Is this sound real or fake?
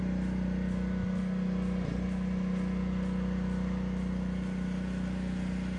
real